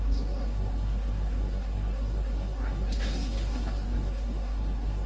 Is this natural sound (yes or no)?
no